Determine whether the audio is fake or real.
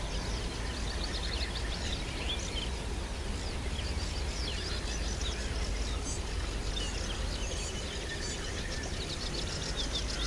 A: real